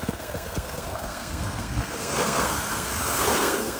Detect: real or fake fake